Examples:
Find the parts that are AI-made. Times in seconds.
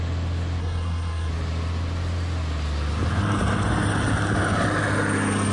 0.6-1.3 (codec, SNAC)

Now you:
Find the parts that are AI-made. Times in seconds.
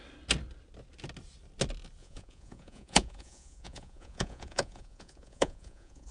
2.0-6.1 (vocoder, Vocos)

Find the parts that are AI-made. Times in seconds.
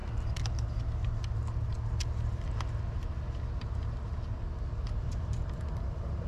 none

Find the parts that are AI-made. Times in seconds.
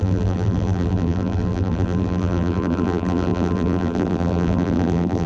0.0-5.3 (vocoder, BigVGAN v2)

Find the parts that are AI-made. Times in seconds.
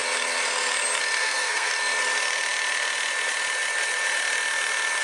1.2-1.7 (codec, SNAC)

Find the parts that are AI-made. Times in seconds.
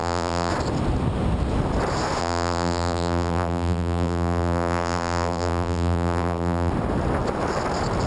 0.0-0.5 (vocoder, BigVGAN v2); 2.2-6.7